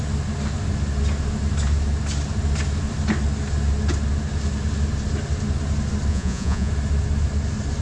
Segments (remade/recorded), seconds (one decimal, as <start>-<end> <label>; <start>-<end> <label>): 0.0-6.1 recorded; 6.1-6.7 remade; 6.7-7.8 recorded